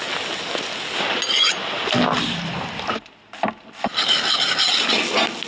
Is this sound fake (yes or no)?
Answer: no